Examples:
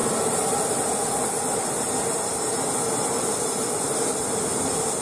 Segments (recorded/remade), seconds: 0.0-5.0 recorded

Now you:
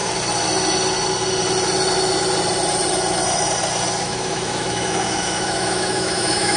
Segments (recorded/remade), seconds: 0.0-4.0 recorded; 4.0-6.6 remade